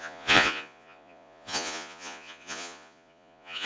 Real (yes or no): no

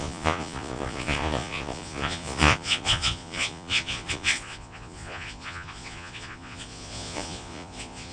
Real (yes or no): no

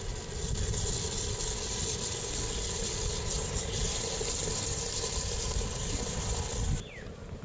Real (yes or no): yes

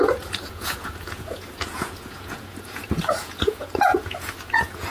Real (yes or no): no